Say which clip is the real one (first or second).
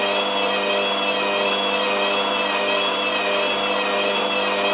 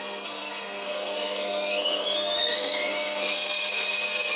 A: first